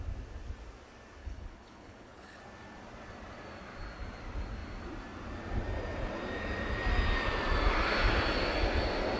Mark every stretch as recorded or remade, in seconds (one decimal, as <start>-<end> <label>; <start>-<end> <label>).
0.0-1.2 recorded; 1.2-2.4 remade; 2.4-9.2 recorded

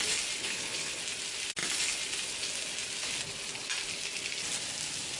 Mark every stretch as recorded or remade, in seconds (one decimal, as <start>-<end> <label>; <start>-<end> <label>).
0.0-0.4 recorded; 0.4-1.0 remade; 1.0-5.2 recorded

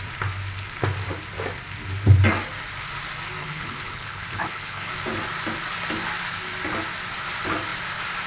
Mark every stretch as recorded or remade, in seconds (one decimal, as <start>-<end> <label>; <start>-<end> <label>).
0.0-3.4 recorded; 3.4-4.9 remade; 4.9-8.3 recorded

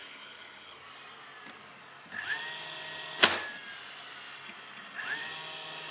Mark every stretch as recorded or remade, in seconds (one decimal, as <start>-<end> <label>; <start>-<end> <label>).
0.0-0.8 remade; 0.8-5.9 recorded

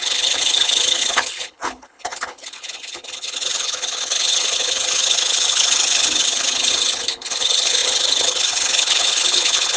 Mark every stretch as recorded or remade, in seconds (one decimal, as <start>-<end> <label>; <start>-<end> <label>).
0.0-9.8 remade

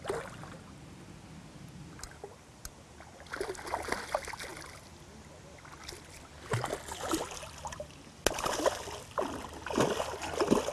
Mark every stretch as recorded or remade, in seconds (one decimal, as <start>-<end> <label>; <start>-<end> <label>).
0.0-10.7 recorded

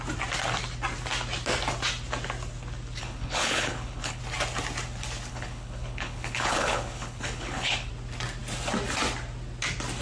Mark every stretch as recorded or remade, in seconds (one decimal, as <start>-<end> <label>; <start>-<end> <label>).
0.0-3.0 recorded; 3.0-4.2 remade; 4.2-5.3 recorded; 5.3-7.9 remade; 7.9-10.0 recorded

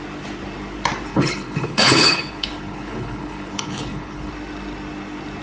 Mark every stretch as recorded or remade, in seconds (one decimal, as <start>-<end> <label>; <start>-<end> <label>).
0.0-1.1 recorded; 1.1-4.3 remade; 4.3-5.4 recorded